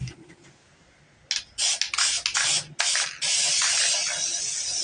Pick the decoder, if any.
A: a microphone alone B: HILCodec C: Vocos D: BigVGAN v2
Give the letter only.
A